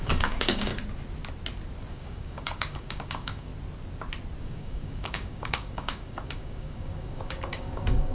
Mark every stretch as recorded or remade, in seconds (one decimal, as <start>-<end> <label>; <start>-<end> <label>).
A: 0.0-0.7 remade; 0.7-1.9 recorded; 1.9-3.5 remade; 3.5-4.4 recorded; 4.4-8.1 remade